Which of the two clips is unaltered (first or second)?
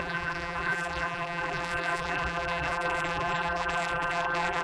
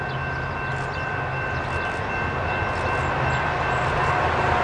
second